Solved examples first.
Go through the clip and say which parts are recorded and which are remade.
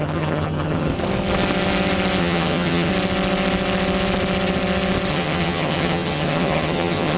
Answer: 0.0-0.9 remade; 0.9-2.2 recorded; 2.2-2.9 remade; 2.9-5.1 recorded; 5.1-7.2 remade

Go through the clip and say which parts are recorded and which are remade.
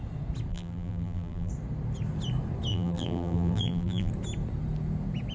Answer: 0.0-0.5 recorded; 0.5-1.5 remade; 1.5-2.7 recorded; 2.7-4.1 remade; 4.1-5.3 recorded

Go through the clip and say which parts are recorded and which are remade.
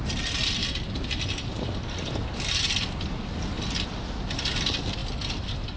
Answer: 0.0-5.8 recorded